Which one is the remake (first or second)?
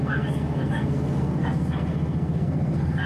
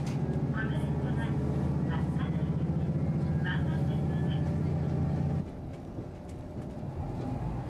first